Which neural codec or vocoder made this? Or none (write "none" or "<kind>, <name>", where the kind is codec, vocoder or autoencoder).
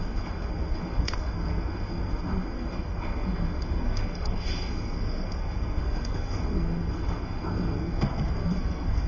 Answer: codec, SNAC